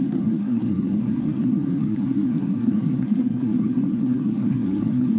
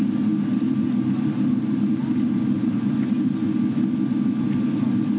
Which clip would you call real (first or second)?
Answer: second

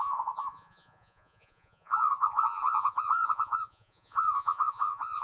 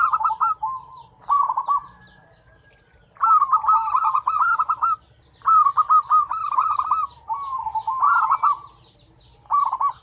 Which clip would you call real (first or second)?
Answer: second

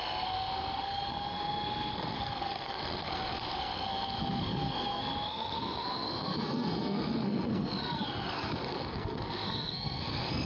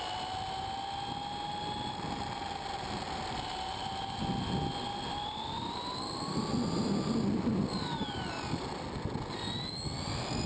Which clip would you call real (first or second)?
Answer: second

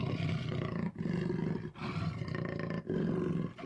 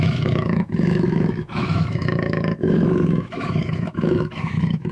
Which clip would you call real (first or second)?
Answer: first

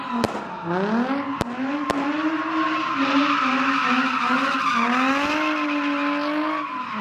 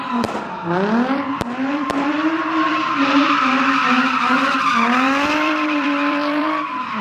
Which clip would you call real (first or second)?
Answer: first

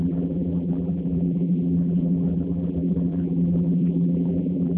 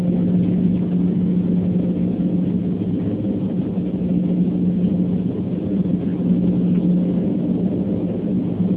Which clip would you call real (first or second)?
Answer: second